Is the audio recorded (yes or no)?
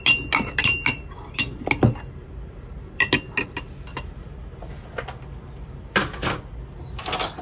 yes